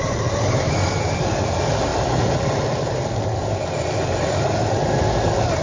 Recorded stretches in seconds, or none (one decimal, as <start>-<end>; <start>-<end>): 0.0-5.6